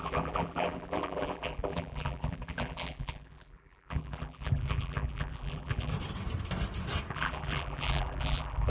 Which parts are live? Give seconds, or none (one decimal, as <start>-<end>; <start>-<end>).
5.9-7.1